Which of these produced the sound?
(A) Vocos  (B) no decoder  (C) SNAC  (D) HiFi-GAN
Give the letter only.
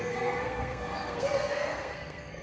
C